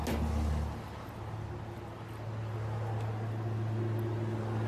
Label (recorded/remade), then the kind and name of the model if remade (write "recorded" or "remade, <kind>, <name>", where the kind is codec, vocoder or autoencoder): recorded